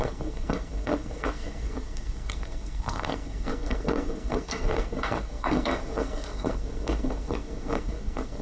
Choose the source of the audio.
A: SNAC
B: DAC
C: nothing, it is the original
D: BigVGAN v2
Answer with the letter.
A